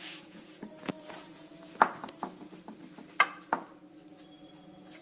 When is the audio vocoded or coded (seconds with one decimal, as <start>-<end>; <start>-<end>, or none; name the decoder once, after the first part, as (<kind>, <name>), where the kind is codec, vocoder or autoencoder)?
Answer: 0.0-1.5 (vocoder, Vocos); 4.5-5.0